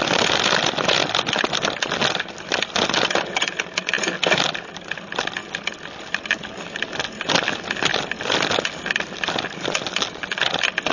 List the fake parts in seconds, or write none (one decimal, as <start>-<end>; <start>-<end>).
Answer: 5.4-6.0